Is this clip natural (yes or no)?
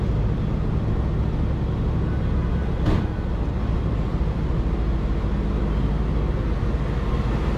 yes